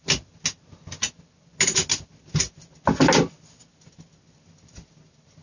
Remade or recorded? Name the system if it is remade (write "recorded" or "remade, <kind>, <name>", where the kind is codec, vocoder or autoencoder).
recorded